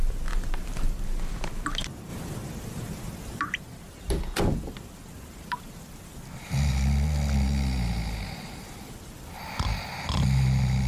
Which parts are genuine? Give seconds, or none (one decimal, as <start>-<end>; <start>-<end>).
0.0-10.9